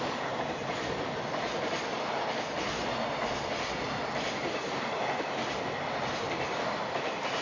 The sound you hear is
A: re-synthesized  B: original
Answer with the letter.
B